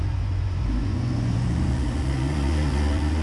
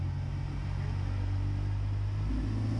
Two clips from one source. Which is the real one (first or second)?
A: second